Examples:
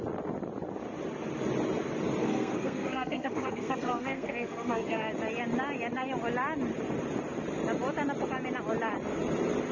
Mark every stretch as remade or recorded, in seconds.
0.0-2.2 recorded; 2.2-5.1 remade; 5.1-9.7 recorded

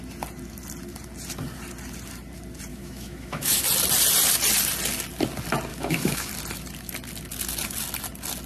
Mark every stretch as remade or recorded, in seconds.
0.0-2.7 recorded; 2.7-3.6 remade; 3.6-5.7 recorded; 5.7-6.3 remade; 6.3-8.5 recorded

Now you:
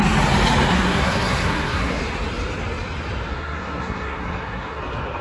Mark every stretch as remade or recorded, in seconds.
0.0-0.7 recorded; 0.7-2.0 remade; 2.0-3.3 recorded; 3.3-4.8 remade; 4.8-5.2 recorded